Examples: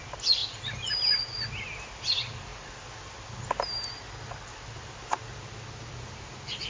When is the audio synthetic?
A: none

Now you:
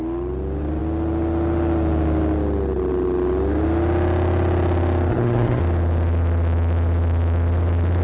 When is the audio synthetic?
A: 5.1-5.6

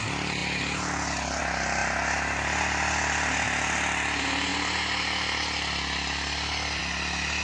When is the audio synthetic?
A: none